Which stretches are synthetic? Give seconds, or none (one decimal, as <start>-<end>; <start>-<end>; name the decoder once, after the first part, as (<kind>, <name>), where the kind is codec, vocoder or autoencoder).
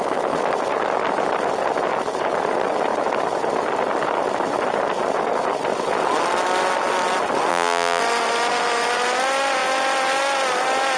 7.5-8.0 (vocoder, BigVGAN v2)